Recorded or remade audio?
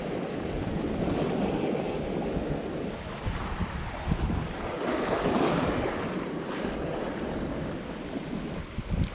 recorded